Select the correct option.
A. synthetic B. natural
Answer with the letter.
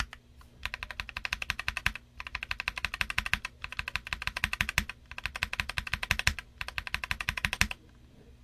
B